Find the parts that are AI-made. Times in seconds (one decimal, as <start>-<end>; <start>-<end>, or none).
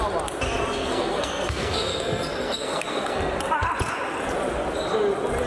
0.8-3.2